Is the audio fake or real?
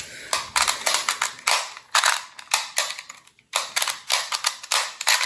real